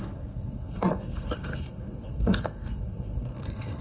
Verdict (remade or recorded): remade